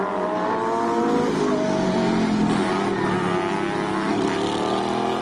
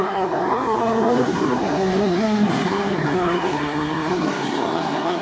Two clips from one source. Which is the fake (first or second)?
second